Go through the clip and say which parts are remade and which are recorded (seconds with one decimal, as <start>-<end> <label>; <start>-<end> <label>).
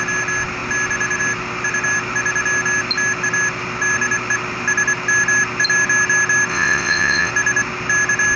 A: 0.0-6.5 recorded; 6.5-7.3 remade; 7.3-8.4 recorded